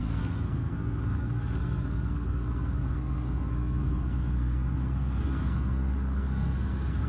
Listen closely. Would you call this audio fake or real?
fake